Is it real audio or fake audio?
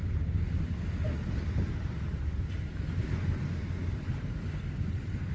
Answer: real